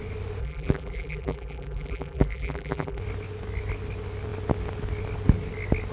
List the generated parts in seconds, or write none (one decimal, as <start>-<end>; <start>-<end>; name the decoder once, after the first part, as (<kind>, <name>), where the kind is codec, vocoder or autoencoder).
0.4-3.0 (vocoder, BigVGAN v2)